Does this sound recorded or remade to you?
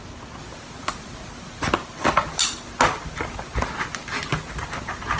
recorded